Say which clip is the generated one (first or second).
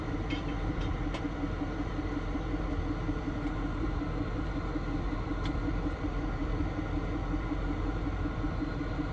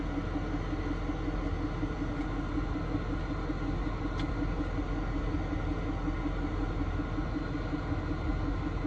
first